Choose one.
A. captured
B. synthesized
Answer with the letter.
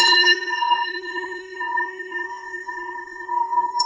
B